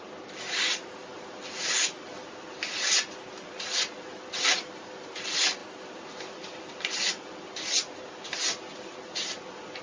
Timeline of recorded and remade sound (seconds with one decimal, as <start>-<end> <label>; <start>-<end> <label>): 0.0-9.8 recorded